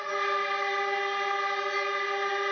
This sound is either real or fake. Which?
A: real